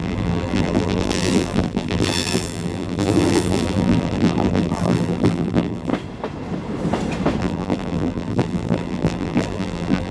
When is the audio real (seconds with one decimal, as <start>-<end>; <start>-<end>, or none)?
5.9-7.4